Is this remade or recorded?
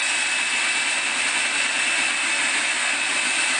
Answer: recorded